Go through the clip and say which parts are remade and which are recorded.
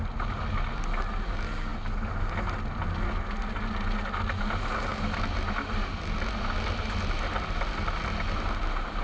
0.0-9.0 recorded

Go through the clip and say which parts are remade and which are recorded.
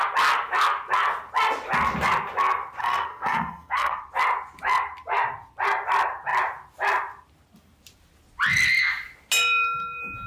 0.0-2.8 recorded; 2.8-4.0 remade; 4.0-10.3 recorded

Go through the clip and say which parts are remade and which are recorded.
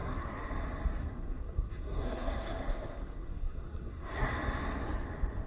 0.0-0.5 remade; 0.5-1.0 recorded; 1.0-4.3 remade; 4.3-5.5 recorded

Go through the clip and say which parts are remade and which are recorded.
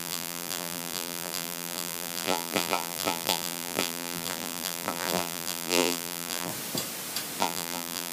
0.0-6.5 remade; 6.5-7.4 recorded; 7.4-8.1 remade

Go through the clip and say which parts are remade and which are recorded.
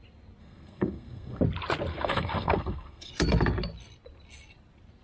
0.0-0.4 recorded; 0.4-1.4 remade; 1.4-1.9 recorded; 1.9-3.1 remade; 3.1-5.0 recorded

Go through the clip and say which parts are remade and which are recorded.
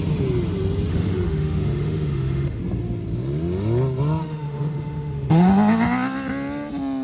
0.0-0.9 recorded; 0.9-2.6 remade; 2.6-4.2 recorded; 4.2-5.5 remade; 5.5-7.0 recorded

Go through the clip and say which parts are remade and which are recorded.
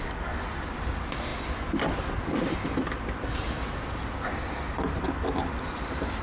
0.0-6.2 recorded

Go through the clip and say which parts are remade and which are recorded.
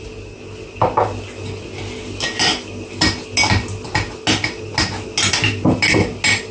0.0-6.5 recorded